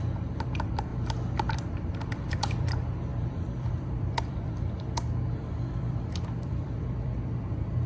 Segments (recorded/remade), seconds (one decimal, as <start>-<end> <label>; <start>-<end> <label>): 0.0-0.9 remade; 0.9-1.5 recorded; 1.5-7.9 remade